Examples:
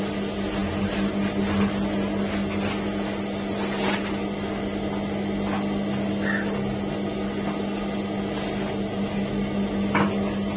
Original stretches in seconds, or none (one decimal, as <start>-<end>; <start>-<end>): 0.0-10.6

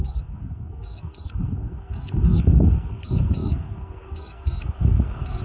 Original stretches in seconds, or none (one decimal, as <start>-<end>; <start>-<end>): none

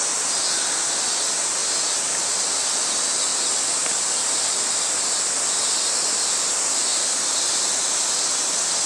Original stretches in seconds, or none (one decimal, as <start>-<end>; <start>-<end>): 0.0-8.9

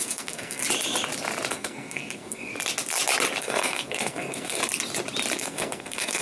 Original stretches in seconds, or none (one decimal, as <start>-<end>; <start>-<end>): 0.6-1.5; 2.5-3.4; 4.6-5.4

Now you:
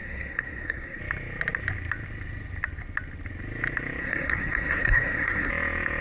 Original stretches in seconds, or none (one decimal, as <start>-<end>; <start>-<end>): 1.0-4.0; 5.5-6.0